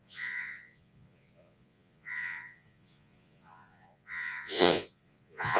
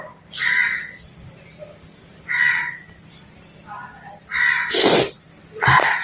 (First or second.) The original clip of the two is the second